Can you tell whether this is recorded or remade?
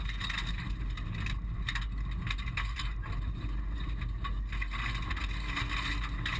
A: recorded